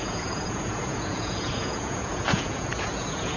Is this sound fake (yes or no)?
yes